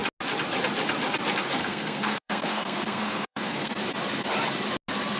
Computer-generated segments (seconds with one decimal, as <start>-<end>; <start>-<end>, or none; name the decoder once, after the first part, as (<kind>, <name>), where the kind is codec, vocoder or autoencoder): 1.6-3.7 (codec, SNAC)